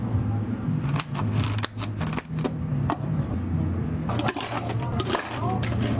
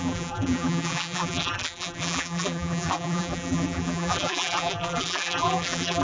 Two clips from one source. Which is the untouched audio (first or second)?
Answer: first